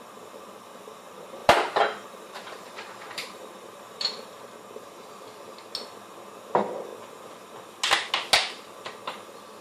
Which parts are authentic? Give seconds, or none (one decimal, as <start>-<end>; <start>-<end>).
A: 0.0-1.4; 4.4-9.6

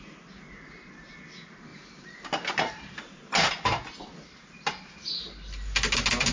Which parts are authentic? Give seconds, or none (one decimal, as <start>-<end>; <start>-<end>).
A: 0.0-1.7; 3.5-6.3